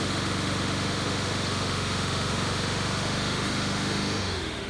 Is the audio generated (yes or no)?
yes